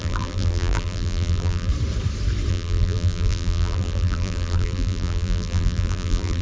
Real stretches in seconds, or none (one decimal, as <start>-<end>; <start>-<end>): 1.7-2.5